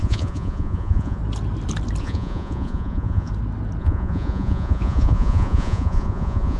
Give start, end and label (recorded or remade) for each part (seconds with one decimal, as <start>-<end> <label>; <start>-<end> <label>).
0.0-1.2 remade; 1.2-2.0 recorded; 2.0-3.3 remade; 3.3-3.8 recorded; 3.8-6.6 remade